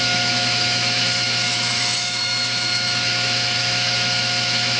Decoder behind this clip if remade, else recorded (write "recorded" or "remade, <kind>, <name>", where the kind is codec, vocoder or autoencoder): remade, autoencoder, DAC-VAE